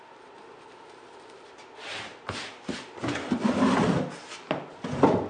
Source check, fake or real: real